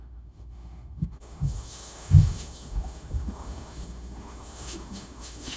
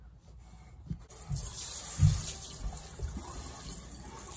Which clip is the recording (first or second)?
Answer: second